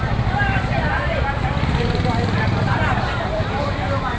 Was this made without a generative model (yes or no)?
no